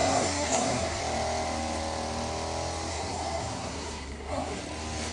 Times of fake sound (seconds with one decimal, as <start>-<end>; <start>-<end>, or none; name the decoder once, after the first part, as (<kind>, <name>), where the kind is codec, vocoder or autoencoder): 0.0-1.0 (codec, SNAC); 2.9-4.6